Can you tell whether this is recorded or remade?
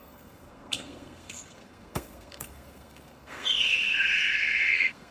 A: remade